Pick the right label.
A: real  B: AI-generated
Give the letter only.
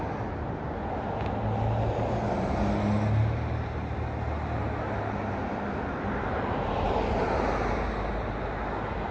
A